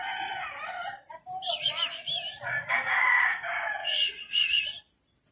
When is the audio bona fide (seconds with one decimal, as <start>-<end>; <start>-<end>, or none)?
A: 0.0-3.8; 4.6-5.3